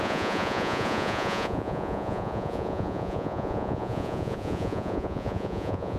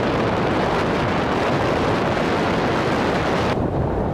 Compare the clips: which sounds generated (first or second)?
first